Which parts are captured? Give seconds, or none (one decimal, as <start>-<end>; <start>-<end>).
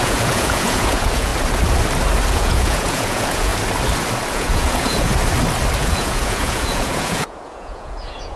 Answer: 1.3-2.3; 3.5-4.3; 5.1-5.8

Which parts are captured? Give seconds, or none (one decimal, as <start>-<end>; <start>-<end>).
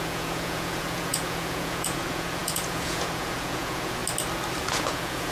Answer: 4.0-4.7